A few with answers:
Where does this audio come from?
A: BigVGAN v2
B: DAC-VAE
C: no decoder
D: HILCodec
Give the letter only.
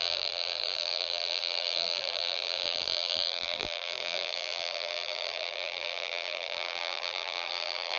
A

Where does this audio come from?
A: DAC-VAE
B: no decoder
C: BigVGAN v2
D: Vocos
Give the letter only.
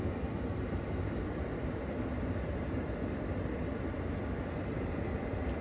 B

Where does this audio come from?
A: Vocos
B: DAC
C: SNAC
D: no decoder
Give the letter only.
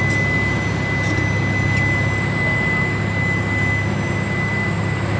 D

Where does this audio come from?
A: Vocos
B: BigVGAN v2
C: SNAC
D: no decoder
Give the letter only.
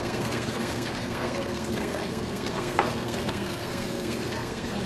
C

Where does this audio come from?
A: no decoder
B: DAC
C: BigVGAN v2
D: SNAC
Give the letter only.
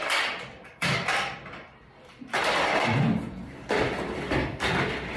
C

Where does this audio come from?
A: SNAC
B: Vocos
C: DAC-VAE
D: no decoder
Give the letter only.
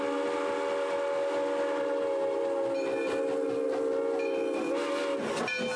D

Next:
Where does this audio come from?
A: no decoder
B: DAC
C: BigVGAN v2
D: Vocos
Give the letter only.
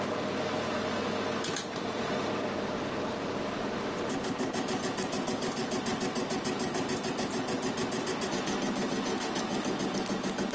A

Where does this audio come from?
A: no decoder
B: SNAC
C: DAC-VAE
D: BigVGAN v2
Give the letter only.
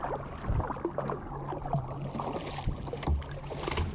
A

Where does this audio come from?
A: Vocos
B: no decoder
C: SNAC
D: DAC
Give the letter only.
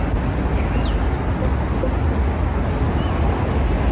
B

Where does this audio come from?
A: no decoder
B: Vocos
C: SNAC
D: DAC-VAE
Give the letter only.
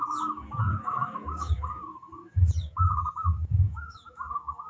D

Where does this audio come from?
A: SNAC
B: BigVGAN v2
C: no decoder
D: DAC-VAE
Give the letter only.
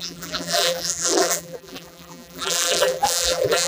B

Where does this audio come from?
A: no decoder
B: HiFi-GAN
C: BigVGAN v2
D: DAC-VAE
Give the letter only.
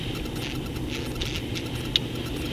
A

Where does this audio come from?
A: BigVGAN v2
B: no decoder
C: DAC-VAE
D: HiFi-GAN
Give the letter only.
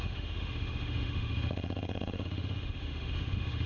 C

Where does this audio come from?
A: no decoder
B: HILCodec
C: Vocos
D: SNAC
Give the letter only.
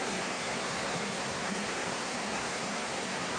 D